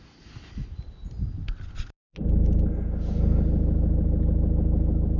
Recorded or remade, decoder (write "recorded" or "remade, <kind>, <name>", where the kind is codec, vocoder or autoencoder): recorded